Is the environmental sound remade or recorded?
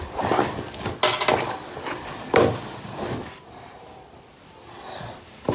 recorded